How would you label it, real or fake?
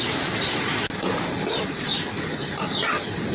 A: fake